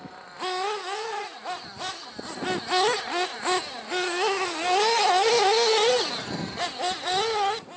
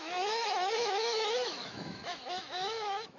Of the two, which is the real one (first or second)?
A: first